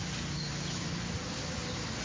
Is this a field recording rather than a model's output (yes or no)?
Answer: yes